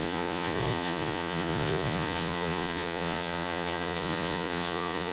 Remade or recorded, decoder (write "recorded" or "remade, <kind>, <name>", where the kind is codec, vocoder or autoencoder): remade, vocoder, Vocos